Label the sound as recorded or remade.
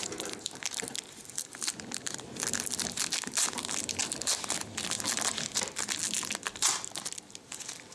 recorded